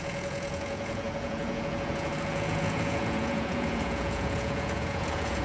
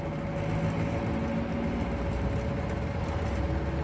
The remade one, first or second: first